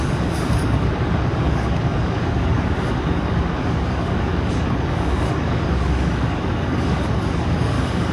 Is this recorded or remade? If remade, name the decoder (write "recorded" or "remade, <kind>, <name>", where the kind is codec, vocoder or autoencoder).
remade, codec, DAC